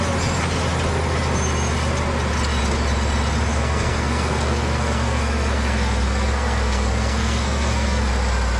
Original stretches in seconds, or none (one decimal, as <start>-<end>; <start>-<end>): 0.0-3.5; 8.1-8.6